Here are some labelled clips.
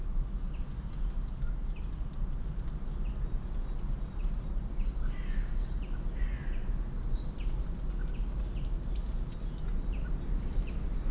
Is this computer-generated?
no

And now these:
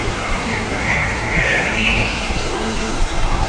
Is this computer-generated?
yes